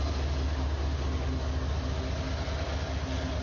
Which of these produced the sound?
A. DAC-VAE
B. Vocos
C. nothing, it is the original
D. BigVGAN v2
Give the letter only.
C